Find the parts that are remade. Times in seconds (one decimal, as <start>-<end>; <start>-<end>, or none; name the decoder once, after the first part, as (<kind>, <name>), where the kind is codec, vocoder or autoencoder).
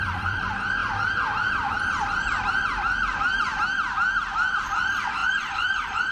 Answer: 0.0-0.8 (vocoder, BigVGAN v2); 1.5-3.5; 4.6-6.1